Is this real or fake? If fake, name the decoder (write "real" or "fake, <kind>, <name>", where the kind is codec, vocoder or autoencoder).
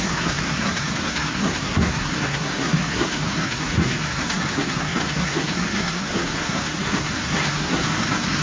fake, codec, SNAC